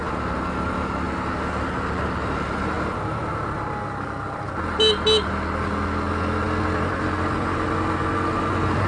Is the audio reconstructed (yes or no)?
no